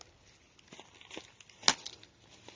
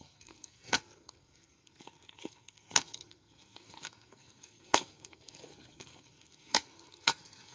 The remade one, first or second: second